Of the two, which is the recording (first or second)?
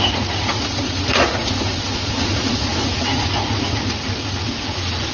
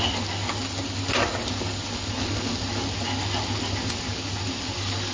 second